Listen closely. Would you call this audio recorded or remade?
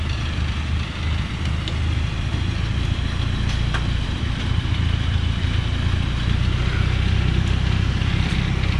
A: remade